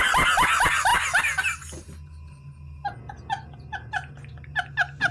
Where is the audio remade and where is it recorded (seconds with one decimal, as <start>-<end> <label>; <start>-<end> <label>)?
0.0-0.9 recorded; 0.9-1.4 remade; 1.4-5.1 recorded